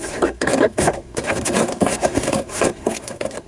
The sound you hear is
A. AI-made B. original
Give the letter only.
A